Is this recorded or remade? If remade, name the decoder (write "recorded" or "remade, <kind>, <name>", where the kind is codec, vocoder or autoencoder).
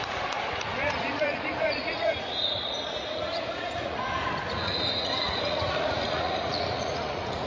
remade, vocoder, Vocos